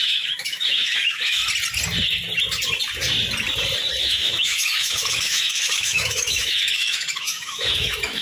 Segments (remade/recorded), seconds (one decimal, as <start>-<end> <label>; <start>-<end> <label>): 0.0-1.4 remade; 1.4-4.0 recorded; 4.0-8.2 remade